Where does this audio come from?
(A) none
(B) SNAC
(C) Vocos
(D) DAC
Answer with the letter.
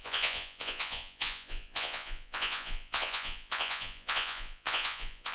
C